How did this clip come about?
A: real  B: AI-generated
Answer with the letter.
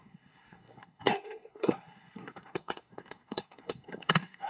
B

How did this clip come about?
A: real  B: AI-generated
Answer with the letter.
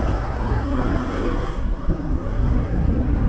B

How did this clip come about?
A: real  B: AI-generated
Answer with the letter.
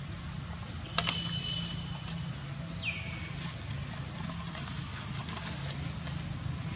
A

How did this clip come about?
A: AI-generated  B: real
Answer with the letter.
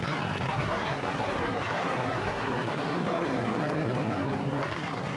A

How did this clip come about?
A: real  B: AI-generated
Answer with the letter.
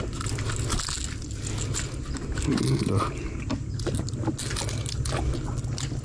A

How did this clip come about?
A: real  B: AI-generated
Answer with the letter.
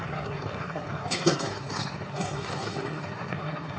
B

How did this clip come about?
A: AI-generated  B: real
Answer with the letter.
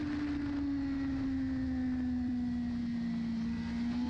B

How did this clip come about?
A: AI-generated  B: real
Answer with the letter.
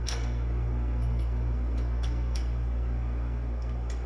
A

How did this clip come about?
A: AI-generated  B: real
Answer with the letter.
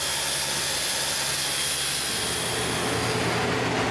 B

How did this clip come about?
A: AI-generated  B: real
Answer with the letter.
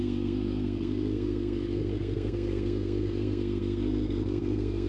A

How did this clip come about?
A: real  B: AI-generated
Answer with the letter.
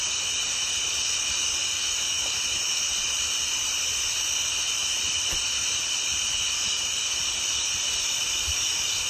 A